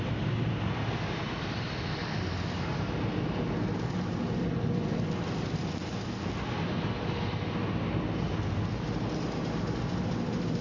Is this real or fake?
real